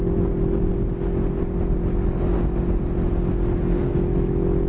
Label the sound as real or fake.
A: real